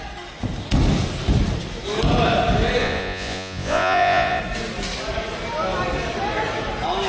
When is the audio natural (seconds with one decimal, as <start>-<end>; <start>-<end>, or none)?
0.0-2.8; 4.4-7.1